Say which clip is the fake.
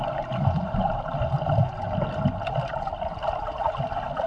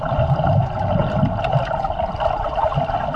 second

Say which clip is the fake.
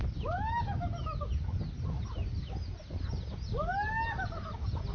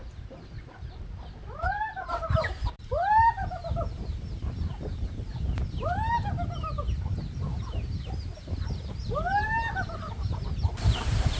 second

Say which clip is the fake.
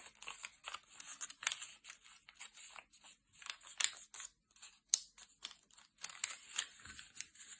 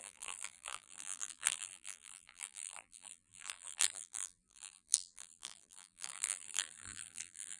second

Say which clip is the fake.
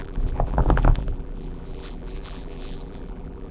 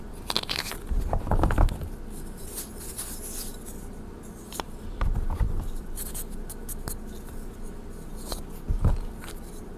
first